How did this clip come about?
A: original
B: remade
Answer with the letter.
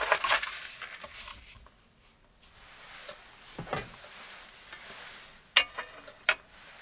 A